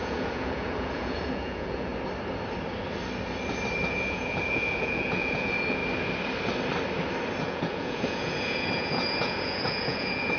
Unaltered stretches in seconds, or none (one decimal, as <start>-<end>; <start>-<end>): 1.9-3.9; 5.8-7.4